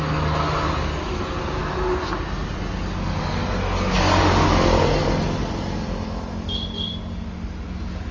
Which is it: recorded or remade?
recorded